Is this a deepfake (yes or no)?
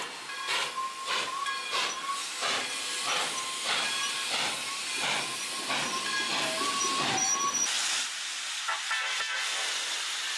no